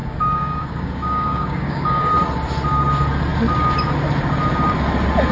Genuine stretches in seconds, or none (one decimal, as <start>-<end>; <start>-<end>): 2.1-5.3